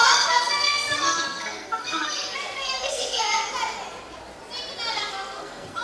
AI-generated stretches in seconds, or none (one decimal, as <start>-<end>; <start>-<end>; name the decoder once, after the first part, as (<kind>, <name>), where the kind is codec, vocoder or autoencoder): 0.0-3.5 (codec, SNAC); 4.9-5.8